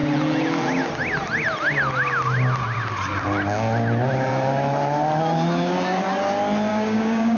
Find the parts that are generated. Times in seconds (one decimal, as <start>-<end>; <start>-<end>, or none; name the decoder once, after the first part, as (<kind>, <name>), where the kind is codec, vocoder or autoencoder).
6.7-7.4 (codec, DAC)